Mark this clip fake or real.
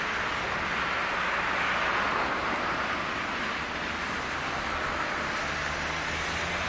real